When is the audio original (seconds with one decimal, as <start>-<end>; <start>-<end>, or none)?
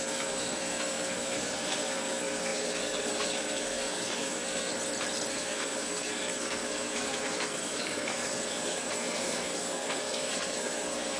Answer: 4.7-5.3